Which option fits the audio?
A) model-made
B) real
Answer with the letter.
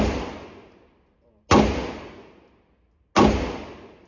B